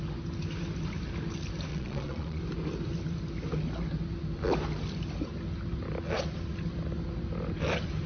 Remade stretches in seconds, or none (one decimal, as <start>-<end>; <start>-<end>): 1.7-2.4